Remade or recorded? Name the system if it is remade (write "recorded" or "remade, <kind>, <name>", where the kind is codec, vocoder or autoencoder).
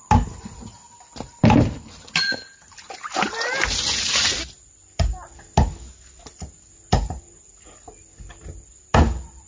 recorded